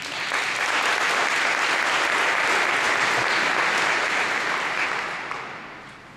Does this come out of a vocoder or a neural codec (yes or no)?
no